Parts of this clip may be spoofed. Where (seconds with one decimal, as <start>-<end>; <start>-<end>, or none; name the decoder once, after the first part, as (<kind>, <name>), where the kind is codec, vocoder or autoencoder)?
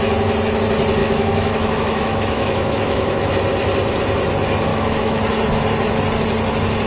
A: 1.0-3.3 (autoencoder, DAC-VAE); 4.7-5.2